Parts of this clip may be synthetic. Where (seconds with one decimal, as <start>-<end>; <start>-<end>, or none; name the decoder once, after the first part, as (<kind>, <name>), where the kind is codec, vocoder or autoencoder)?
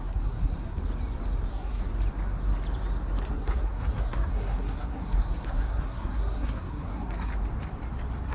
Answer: 0.0-0.8 (codec, SNAC); 1.5-1.9; 3.3-7.3